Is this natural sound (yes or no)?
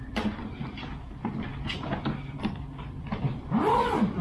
no